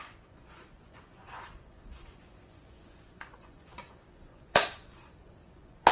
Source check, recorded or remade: remade